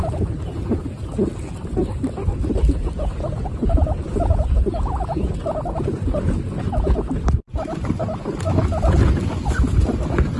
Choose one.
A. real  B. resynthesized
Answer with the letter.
A